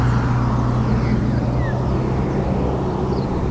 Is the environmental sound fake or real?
real